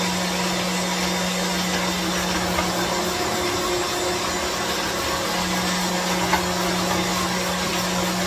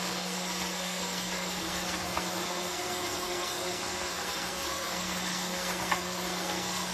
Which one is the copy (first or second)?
second